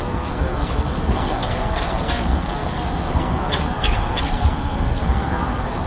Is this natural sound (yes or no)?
no